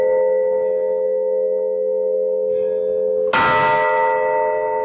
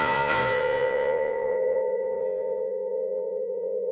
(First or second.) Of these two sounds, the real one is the first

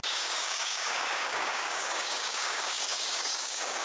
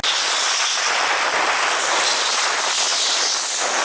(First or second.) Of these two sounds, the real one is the second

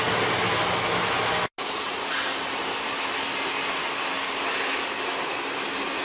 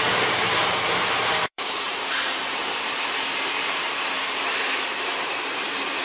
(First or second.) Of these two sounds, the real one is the first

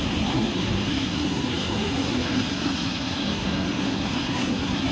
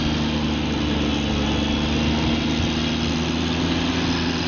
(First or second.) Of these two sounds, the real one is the second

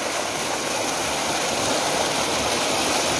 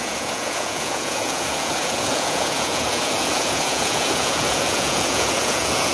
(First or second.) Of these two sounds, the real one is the first